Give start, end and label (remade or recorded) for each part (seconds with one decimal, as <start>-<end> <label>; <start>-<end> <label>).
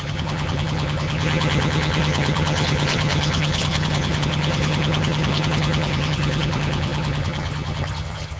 0.0-8.4 remade